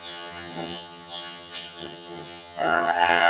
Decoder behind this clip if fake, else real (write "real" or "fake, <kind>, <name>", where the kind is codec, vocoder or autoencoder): fake, vocoder, HiFi-GAN